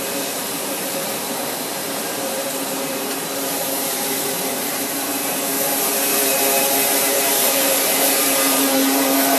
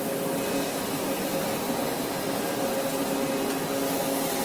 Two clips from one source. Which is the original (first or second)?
second